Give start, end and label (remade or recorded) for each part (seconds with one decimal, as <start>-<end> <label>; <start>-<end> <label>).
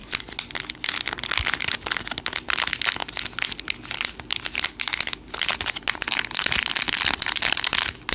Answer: 0.0-8.1 recorded